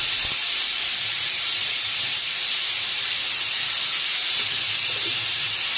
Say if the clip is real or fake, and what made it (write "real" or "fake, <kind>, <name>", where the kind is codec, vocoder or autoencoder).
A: fake, vocoder, BigVGAN v2